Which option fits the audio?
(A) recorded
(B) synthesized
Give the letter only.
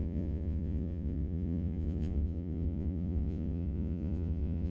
B